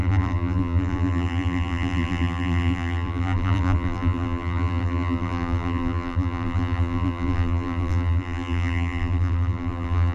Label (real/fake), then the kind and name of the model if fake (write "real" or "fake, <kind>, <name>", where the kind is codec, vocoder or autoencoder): fake, vocoder, BigVGAN v2